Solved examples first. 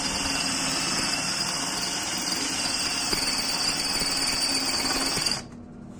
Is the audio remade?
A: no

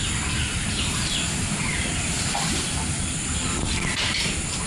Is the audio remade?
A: no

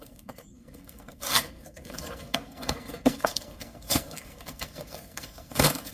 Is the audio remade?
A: yes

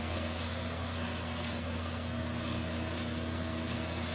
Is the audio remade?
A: yes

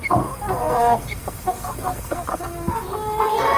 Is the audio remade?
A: yes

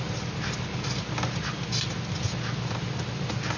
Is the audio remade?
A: no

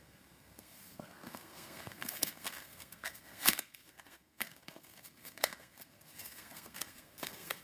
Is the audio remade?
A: yes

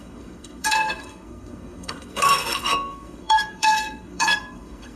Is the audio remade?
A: yes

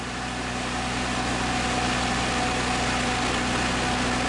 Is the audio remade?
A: no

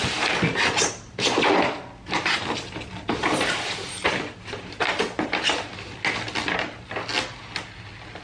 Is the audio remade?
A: no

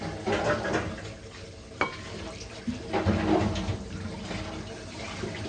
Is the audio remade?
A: no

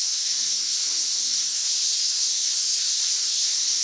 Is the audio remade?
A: yes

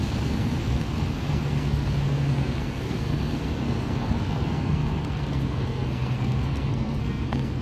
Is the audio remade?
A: yes